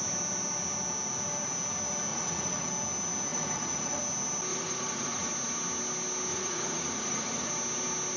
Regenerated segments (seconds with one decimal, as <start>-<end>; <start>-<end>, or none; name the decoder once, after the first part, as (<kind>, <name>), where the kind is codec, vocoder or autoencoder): 2.1-2.7 (vocoder, Vocos); 3.3-4.0; 4.5-5.3; 6.3-7.5